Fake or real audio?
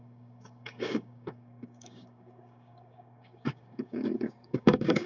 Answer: fake